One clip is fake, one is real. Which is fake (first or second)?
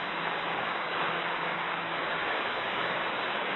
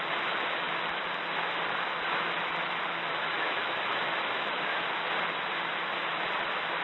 first